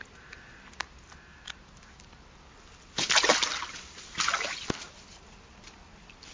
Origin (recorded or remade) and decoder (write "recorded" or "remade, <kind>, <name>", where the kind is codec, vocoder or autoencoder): recorded